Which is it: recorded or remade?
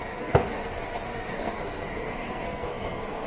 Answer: remade